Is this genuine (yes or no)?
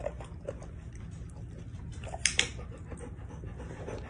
yes